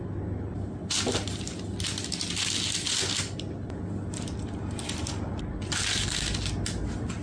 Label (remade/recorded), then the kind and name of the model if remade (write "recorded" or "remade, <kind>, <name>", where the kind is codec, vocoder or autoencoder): recorded